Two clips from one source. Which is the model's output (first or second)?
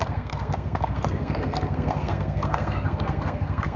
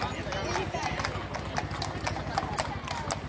first